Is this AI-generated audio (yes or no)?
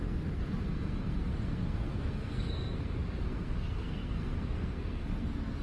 yes